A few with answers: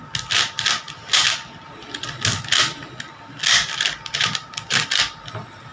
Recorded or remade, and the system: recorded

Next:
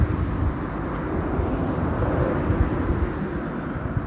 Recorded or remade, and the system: recorded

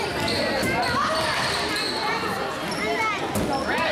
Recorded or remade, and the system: recorded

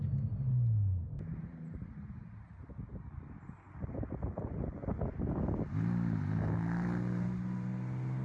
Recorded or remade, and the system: recorded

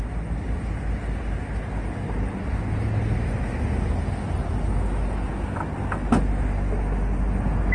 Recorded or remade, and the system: recorded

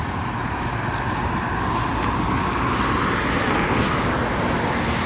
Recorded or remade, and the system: recorded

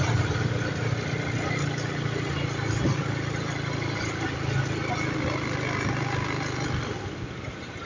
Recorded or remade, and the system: recorded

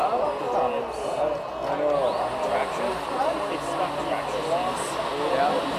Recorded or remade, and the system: recorded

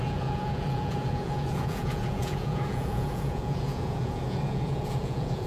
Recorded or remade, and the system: remade, vocoder, Vocos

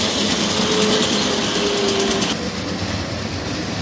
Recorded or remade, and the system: recorded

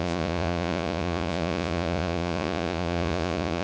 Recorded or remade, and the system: remade, vocoder, Vocos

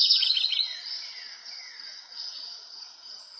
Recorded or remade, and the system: remade, vocoder, Vocos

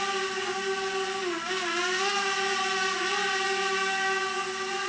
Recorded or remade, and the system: recorded